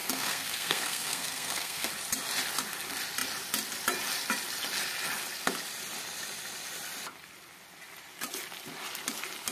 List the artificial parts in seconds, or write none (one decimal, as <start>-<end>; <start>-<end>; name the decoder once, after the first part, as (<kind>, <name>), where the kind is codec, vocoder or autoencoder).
0.0-1.9 (codec, SNAC)